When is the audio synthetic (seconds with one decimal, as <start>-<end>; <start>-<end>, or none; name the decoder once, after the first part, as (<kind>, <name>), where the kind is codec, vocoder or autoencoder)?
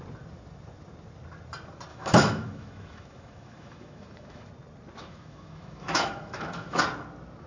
1.9-4.5 (autoencoder, DAC-VAE); 5.0-6.8